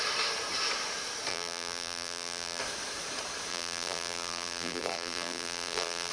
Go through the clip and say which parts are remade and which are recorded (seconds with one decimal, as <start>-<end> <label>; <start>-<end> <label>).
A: 0.0-1.3 recorded; 1.3-2.6 remade; 2.6-3.5 recorded; 3.5-6.1 remade